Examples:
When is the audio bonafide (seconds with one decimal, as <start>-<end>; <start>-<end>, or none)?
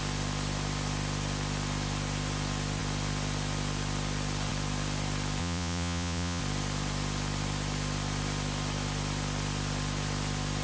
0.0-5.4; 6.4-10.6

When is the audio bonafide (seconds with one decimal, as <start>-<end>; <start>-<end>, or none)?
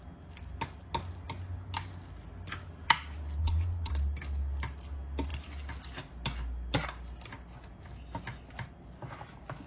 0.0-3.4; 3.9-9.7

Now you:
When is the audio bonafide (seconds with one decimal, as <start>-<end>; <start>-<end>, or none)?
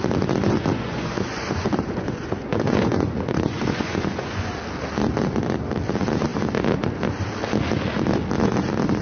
0.0-0.4; 4.5-9.0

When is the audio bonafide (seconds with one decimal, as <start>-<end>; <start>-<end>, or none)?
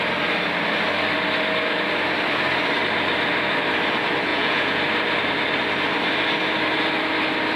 0.0-4.3; 4.8-7.6